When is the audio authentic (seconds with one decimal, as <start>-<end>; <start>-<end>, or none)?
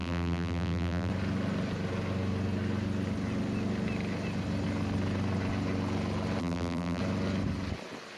1.1-6.4; 7.0-8.2